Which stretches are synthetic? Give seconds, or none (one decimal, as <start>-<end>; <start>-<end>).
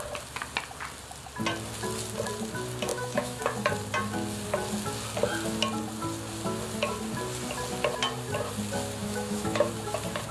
2.9-3.4; 9.0-9.7